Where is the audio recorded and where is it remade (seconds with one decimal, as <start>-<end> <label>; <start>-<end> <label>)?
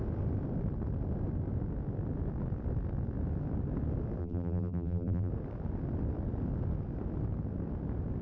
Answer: 0.0-4.2 recorded; 4.2-5.3 remade; 5.3-8.2 recorded